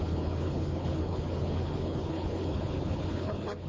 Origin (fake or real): fake